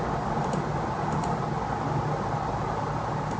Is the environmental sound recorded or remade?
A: recorded